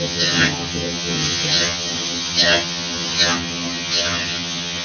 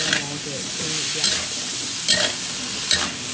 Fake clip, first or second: first